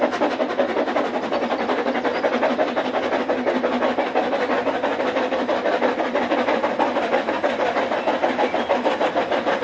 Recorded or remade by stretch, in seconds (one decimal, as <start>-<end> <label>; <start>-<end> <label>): 0.0-2.1 remade; 2.1-5.0 recorded; 5.0-9.6 remade

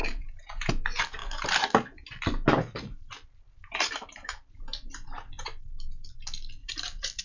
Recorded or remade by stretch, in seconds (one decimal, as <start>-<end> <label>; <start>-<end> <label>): 0.0-0.7 remade; 0.7-1.2 recorded; 1.2-5.3 remade; 5.3-6.6 recorded; 6.6-7.2 remade

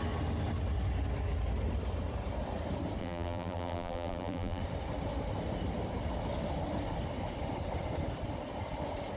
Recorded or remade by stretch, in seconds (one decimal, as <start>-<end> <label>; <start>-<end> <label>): 0.0-3.0 recorded; 3.0-4.6 remade; 4.6-9.2 recorded

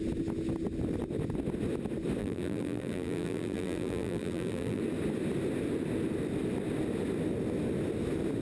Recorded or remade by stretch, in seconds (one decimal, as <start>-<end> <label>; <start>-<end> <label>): 0.0-2.2 recorded; 2.2-4.8 remade; 4.8-8.4 recorded

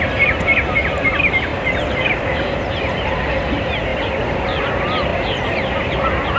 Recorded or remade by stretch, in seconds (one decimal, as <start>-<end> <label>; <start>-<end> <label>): 0.0-3.9 recorded; 3.9-4.6 remade; 4.6-5.1 recorded; 5.1-5.9 remade; 5.9-6.4 recorded